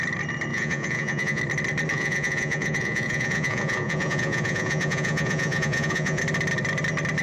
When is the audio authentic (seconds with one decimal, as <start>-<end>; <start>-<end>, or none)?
0.0-0.5; 1.4-1.9; 6.2-7.2